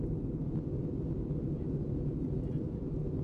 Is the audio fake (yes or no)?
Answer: no